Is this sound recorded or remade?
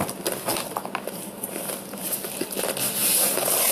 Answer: recorded